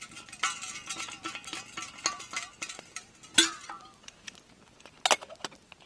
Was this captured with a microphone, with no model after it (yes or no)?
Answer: yes